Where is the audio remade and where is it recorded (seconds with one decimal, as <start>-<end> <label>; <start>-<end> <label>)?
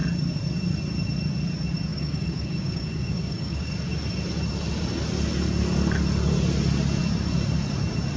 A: 0.0-1.9 recorded; 1.9-3.7 remade; 3.7-8.2 recorded